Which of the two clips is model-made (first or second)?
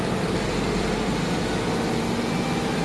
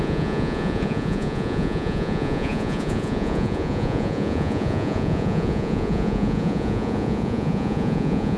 second